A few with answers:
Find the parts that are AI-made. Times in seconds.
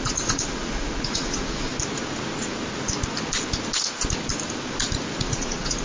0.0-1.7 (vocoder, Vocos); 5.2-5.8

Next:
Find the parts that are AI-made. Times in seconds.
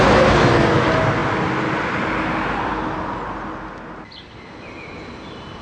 none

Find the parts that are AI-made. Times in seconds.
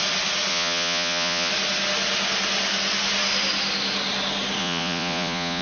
0.5-1.5 (vocoder, Vocos); 4.6-5.6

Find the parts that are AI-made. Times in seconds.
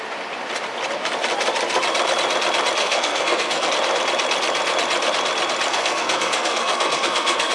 2.8-3.7 (codec, SNAC); 5.7-7.5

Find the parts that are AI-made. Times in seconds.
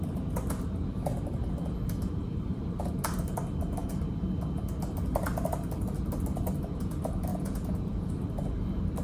7.3-8.1 (vocoder, Vocos)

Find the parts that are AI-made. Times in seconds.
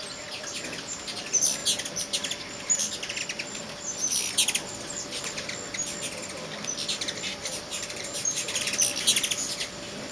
7.4-8.7 (vocoder, BigVGAN v2)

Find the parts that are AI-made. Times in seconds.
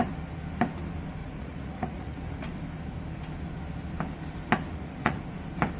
1.2-2.2 (vocoder, Vocos); 4.7-5.2